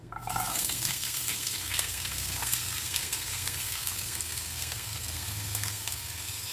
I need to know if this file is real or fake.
fake